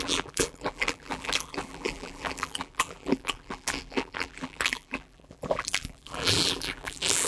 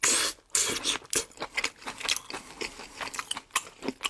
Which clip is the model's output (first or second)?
first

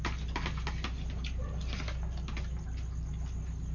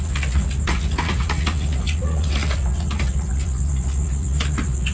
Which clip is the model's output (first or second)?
second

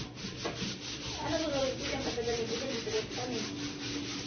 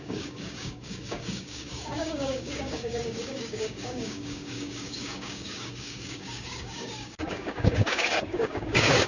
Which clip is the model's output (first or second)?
second